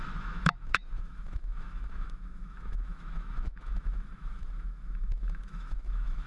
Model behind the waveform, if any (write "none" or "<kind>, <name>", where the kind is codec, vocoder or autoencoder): autoencoder, DAC-VAE